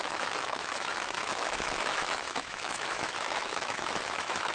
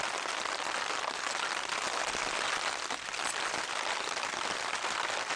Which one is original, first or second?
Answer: second